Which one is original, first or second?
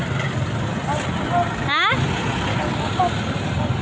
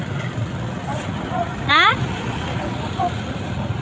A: first